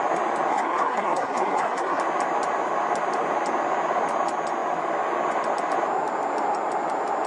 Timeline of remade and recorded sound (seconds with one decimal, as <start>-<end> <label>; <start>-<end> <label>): 0.0-0.5 recorded; 0.5-2.0 remade; 2.0-7.3 recorded